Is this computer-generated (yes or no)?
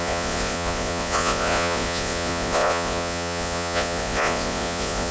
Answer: yes